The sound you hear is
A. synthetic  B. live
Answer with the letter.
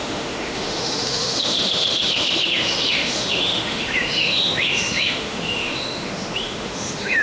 A